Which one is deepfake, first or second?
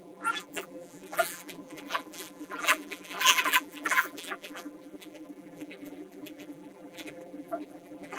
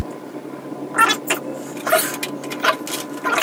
first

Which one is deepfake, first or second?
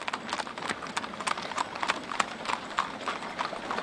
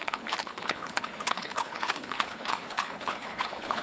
second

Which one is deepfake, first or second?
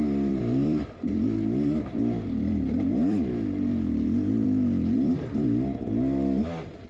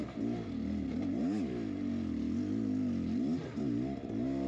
first